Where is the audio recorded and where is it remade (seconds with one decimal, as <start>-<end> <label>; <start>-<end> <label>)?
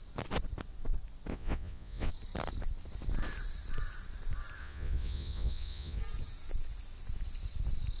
0.0-1.3 recorded; 1.3-2.1 remade; 2.1-4.6 recorded; 4.6-6.0 remade; 6.0-8.0 recorded